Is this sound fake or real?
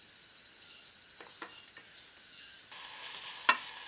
real